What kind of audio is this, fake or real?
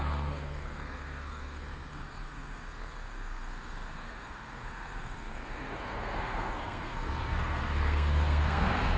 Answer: fake